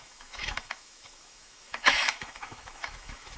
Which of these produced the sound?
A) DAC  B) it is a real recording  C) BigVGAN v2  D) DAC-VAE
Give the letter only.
D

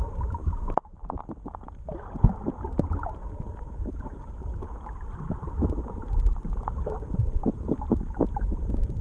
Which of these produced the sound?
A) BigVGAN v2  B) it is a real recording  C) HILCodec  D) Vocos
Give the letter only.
A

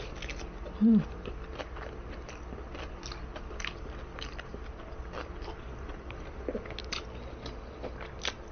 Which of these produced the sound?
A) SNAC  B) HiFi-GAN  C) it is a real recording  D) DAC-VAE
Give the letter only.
C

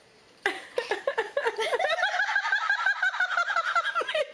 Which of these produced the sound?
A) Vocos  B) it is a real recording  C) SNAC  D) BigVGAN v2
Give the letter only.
D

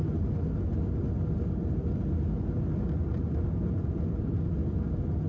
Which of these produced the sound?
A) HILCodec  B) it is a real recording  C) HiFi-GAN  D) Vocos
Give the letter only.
B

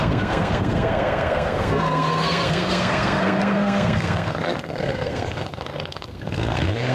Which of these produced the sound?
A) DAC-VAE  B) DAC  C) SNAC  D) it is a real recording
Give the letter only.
C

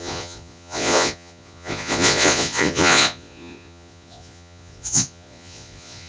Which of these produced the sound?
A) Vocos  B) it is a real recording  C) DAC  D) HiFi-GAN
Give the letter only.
A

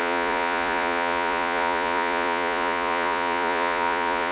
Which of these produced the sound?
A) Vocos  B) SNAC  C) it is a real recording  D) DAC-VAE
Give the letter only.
A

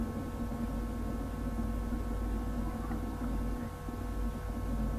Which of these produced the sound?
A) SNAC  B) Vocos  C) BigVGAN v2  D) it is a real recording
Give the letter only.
D